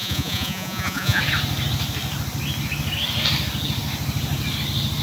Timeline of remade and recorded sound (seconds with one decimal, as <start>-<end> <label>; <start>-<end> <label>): 0.0-1.2 remade; 1.2-5.0 recorded